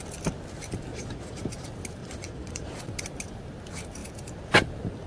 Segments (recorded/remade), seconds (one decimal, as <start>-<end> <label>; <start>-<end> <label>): 0.0-0.9 recorded; 0.9-1.4 remade; 1.4-2.0 recorded; 2.0-2.8 remade; 2.8-5.1 recorded